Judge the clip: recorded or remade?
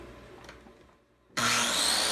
recorded